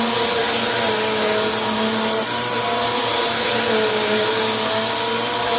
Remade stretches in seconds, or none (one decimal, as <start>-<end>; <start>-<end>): none